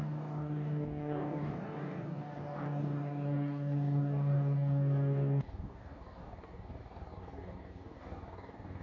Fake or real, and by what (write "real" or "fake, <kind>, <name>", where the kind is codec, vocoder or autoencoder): fake, codec, DAC